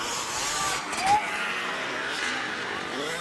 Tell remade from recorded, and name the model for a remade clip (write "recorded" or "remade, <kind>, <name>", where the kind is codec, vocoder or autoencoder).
recorded